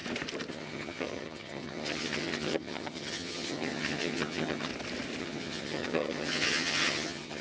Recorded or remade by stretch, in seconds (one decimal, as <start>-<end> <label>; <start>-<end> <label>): 0.0-0.5 recorded; 0.5-4.7 remade; 4.7-5.2 recorded; 5.2-7.4 remade